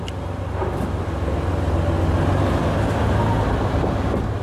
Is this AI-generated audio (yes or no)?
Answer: no